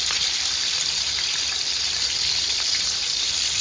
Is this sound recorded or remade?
remade